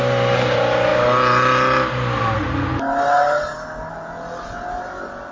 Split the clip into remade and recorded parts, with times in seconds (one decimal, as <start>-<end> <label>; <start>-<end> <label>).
0.0-5.3 recorded